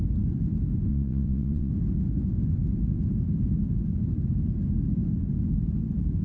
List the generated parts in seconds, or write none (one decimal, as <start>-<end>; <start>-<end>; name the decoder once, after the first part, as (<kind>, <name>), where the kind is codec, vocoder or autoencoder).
0.9-1.7 (vocoder, WaveNeXt)